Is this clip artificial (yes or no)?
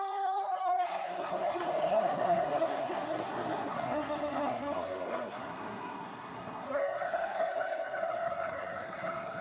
yes